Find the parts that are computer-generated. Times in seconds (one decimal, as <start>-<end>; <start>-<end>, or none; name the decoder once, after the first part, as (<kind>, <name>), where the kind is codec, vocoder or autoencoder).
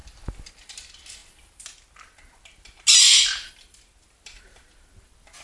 none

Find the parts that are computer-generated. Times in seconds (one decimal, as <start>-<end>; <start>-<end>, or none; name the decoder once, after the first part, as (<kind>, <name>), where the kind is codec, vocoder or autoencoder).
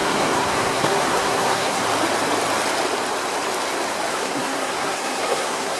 0.0-1.8 (codec, SNAC); 4.1-5.8